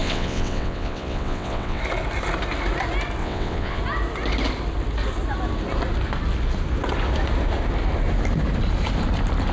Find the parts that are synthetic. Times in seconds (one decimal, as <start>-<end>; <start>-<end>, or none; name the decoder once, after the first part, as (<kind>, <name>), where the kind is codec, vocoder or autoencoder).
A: 0.0-1.8 (vocoder, WaveNeXt); 3.2-3.8

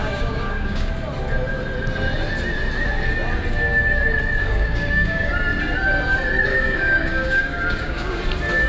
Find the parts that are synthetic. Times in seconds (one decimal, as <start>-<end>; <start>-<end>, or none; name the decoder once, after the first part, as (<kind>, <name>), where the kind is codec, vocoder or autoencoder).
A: 0.0-0.9 (codec, DAC); 4.4-5.3; 6.5-8.2